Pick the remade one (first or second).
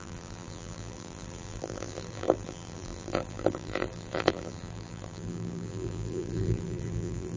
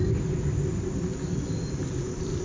first